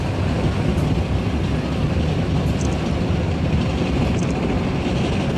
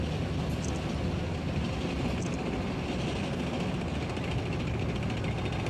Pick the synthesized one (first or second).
first